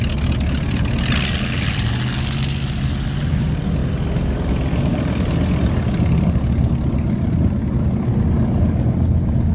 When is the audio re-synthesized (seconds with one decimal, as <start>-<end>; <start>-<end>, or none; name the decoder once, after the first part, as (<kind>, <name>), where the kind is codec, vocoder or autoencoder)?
none